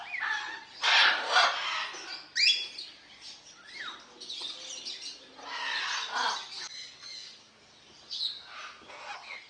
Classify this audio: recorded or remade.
recorded